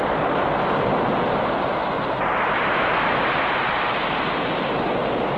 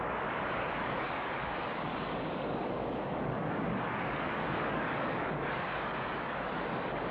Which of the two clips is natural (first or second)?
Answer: first